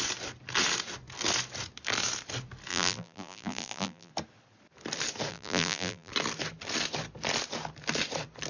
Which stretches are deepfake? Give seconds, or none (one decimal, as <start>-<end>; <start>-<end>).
2.7-4.1; 5.3-6.1